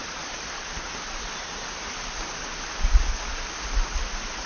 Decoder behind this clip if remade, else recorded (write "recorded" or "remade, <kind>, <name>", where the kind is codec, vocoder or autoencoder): recorded